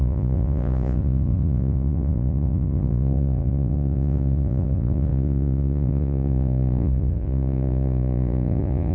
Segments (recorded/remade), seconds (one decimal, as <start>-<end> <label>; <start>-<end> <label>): 0.0-8.9 remade